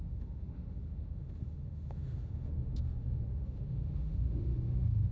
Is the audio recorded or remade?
remade